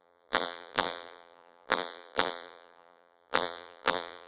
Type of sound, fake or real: fake